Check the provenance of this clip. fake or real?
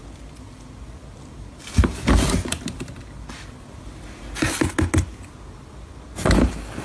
real